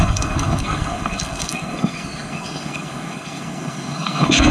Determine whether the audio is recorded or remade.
remade